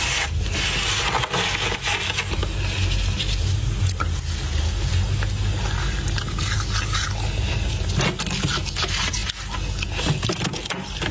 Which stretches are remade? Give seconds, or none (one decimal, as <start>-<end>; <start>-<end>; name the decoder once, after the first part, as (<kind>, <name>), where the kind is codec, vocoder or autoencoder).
none